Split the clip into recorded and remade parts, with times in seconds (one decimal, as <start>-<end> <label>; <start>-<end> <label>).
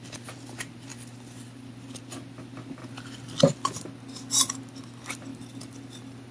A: 0.0-0.9 recorded; 0.9-2.0 remade; 2.0-2.8 recorded; 2.8-3.4 remade; 3.4-5.3 recorded; 5.3-6.3 remade